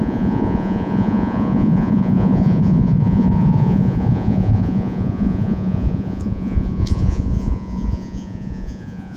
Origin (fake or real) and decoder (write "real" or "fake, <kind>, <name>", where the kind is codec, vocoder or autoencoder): fake, vocoder, Vocos